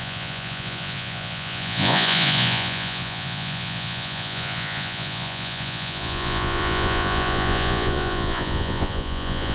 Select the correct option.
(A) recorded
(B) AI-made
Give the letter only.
B